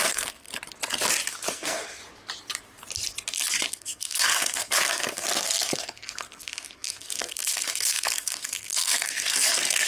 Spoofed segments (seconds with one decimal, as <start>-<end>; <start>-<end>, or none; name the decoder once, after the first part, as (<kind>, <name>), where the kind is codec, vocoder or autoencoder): 0.0-0.5 (codec, SNAC); 1.3-2.0; 3.7-9.9